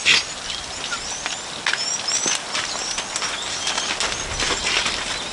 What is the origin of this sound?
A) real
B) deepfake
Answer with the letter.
A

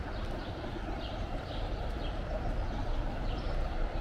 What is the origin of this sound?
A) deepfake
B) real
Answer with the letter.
A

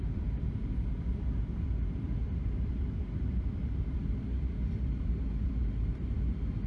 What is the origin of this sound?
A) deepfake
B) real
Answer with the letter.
A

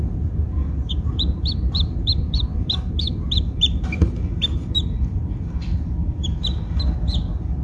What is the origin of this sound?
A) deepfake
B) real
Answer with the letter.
A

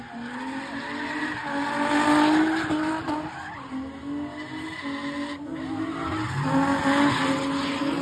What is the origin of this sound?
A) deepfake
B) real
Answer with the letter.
B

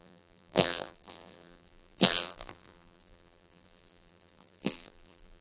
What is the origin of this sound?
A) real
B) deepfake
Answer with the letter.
B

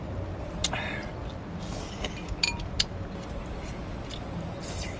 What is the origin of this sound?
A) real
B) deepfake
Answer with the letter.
A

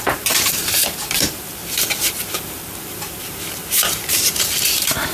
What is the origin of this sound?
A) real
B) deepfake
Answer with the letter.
B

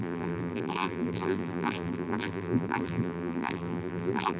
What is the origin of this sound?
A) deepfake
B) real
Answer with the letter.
A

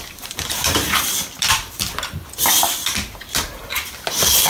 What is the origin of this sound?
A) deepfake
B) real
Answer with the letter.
A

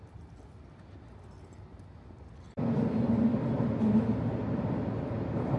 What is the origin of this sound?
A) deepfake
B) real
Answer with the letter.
B